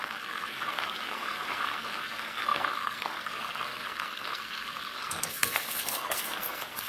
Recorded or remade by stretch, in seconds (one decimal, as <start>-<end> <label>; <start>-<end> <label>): 0.0-6.9 remade